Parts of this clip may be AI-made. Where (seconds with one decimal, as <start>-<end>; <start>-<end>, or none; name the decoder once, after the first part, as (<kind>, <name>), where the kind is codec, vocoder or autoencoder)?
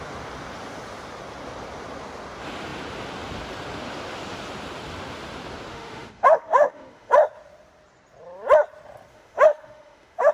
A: 5.7-7.1 (autoencoder, DAC-VAE); 9.1-10.3